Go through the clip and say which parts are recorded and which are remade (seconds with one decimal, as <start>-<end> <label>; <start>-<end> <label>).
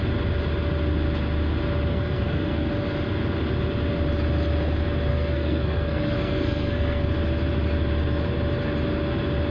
0.0-1.9 recorded; 1.9-2.7 remade; 2.7-5.1 recorded; 5.1-7.1 remade; 7.1-9.5 recorded